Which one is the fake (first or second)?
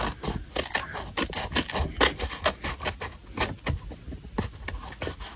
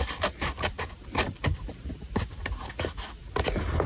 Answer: second